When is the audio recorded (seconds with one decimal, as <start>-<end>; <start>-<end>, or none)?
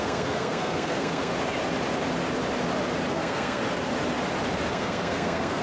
1.3-3.1; 3.6-4.7